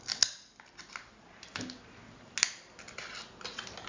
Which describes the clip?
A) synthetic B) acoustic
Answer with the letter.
B